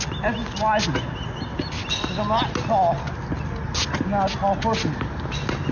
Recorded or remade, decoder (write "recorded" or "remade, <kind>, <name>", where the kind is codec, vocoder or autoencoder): recorded